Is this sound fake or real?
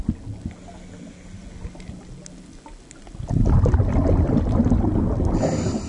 real